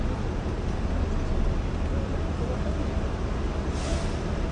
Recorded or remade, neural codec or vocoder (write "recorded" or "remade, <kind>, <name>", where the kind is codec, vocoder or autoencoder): recorded